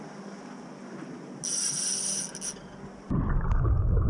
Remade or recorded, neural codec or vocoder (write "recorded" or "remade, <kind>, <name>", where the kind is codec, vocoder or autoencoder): recorded